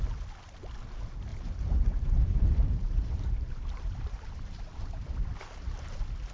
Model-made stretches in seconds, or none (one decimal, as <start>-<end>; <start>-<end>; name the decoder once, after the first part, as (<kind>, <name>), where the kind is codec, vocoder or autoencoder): 1.3-5.1 (vocoder, BigVGAN v2)